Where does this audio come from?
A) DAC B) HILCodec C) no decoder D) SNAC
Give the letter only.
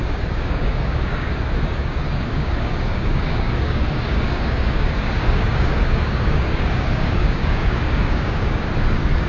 A